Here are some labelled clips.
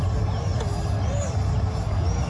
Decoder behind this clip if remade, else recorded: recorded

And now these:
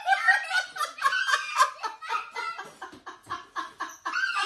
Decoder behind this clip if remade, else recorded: recorded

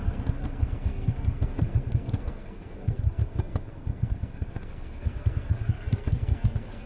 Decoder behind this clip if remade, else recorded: remade, codec, SNAC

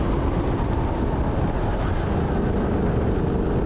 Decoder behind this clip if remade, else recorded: recorded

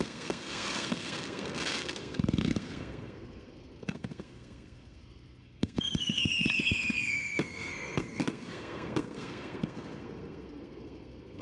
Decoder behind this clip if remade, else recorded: remade, codec, SNAC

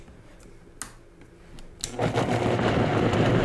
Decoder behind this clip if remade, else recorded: recorded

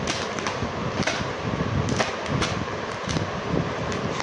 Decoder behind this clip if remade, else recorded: recorded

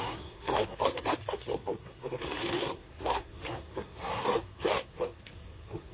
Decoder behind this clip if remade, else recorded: remade, codec, SNAC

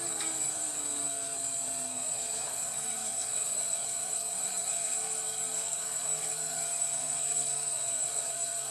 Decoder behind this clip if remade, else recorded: remade, codec, SNAC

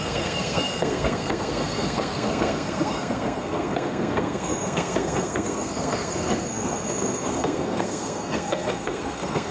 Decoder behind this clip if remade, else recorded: remade, codec, SNAC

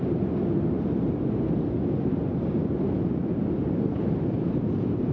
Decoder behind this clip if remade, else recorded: recorded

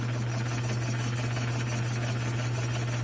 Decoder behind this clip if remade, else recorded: recorded